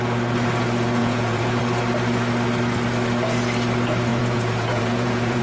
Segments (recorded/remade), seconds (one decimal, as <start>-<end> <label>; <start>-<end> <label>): 0.0-1.0 recorded; 1.0-1.6 remade; 1.6-4.1 recorded; 4.1-5.4 remade